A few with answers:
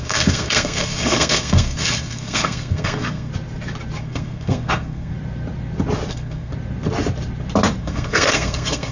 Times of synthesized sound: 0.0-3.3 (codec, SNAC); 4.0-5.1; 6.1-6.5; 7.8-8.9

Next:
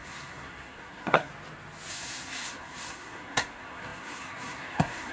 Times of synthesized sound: 0.0-1.3 (codec, SNAC); 1.9-5.1